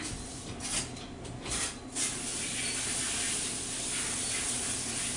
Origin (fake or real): real